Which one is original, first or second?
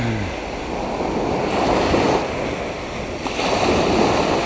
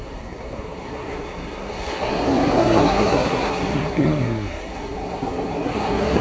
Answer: first